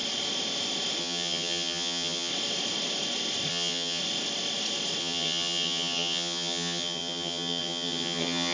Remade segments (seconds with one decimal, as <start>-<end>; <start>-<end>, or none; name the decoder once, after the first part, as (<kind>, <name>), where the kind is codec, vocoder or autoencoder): 1.0-2.3 (vocoder, HiFi-GAN); 3.5-4.0; 5.0-8.5